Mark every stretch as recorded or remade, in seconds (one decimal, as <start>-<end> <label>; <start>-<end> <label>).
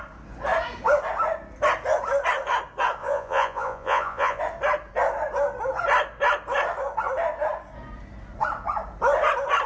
0.0-3.0 recorded; 3.0-4.4 remade; 4.4-9.7 recorded